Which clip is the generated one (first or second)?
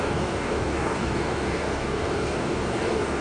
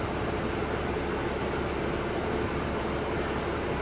first